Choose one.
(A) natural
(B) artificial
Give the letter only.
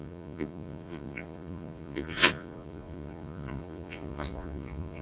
B